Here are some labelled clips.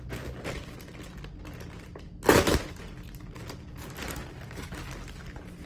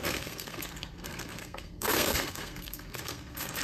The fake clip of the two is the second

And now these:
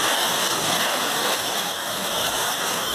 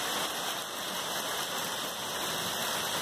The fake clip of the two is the first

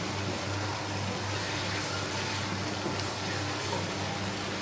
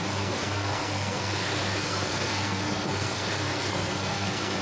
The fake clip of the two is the second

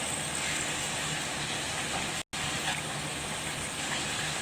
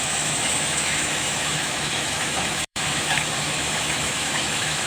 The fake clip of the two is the second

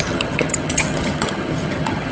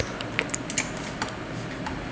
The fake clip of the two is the first